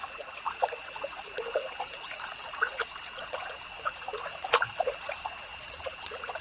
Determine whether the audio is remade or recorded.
remade